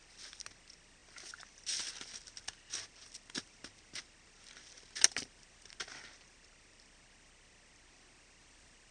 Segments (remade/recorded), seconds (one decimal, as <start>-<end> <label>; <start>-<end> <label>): 0.0-8.9 recorded